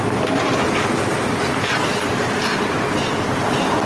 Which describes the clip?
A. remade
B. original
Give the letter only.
A